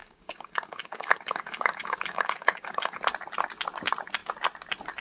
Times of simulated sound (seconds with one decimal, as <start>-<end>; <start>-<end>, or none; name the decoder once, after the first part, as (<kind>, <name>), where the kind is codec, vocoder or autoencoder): 0.0-3.0 (codec, DAC)